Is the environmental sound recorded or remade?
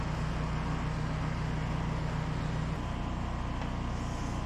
recorded